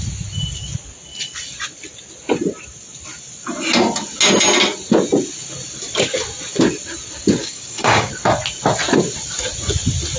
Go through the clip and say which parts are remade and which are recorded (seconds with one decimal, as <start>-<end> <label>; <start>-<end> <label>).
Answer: 0.0-7.4 recorded; 7.4-8.1 remade; 8.1-10.2 recorded